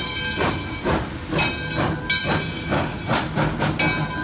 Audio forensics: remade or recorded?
recorded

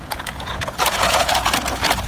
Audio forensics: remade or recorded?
remade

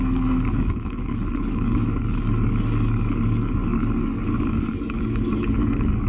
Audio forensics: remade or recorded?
remade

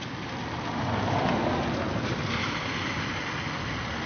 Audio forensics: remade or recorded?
recorded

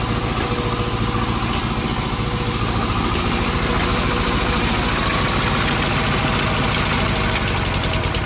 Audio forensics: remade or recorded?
recorded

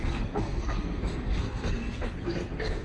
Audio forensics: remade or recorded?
remade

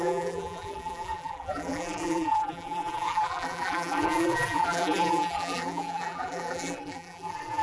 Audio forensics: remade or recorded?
remade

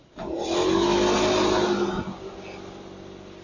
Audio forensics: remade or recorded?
recorded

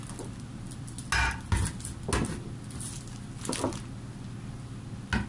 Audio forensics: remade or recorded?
recorded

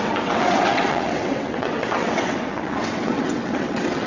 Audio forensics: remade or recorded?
remade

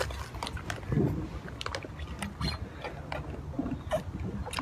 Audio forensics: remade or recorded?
recorded